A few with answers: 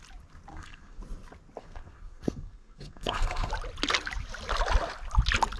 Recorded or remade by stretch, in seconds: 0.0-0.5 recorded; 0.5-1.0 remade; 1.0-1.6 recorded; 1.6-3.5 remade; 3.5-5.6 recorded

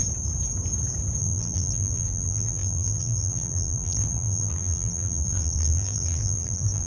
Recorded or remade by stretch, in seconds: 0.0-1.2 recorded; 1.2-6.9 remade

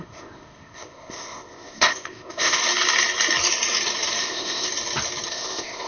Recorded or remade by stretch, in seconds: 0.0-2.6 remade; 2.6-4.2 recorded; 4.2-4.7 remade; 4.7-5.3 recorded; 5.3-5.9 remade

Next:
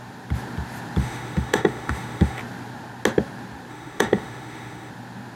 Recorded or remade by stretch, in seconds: 0.0-1.0 recorded; 1.0-2.4 remade; 2.4-3.7 recorded; 3.7-4.9 remade; 4.9-5.4 recorded

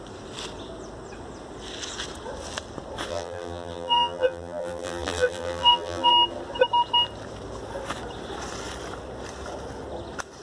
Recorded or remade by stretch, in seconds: 0.0-3.1 recorded; 3.1-6.1 remade; 6.1-10.4 recorded